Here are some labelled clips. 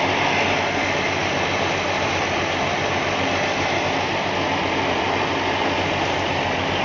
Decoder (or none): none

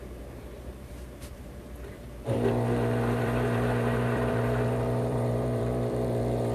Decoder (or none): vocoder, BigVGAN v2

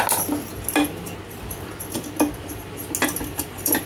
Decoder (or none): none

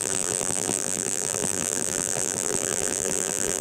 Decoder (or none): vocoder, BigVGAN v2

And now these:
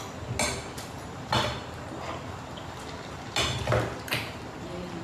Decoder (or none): none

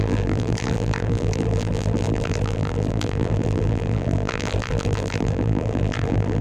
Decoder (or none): vocoder, BigVGAN v2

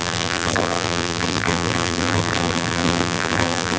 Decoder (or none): vocoder, BigVGAN v2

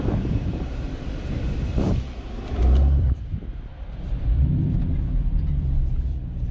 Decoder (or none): vocoder, BigVGAN v2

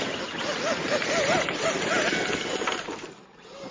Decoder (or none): none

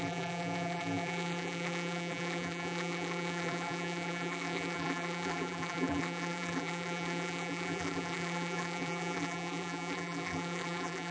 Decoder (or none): vocoder, BigVGAN v2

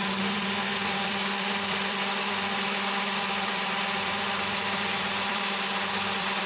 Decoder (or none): vocoder, BigVGAN v2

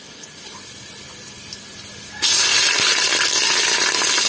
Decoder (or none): none